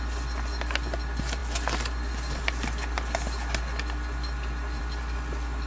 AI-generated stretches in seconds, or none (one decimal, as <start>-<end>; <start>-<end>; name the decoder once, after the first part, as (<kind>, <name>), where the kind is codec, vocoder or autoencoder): none